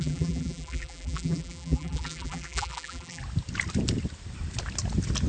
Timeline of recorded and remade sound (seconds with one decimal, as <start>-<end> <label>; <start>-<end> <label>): 0.0-3.2 remade; 3.2-5.3 recorded